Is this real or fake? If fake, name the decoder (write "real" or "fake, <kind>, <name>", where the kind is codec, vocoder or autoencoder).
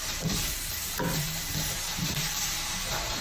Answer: fake, vocoder, BigVGAN v2